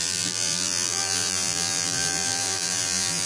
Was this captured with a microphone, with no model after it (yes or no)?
no